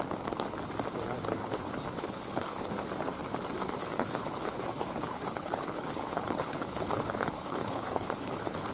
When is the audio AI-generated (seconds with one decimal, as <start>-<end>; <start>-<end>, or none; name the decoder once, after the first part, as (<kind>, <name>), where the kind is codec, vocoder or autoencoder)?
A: 1.4-2.7 (codec, HILCodec); 3.6-8.7